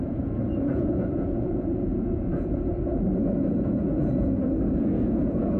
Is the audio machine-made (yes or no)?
yes